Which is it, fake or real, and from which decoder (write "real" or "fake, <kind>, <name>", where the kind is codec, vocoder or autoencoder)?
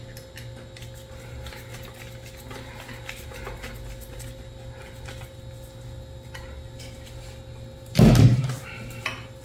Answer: real